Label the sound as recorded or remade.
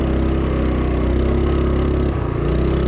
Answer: recorded